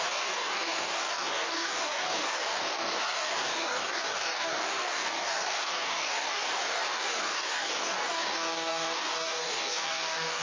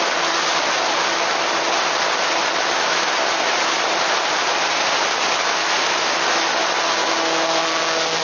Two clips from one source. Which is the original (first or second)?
second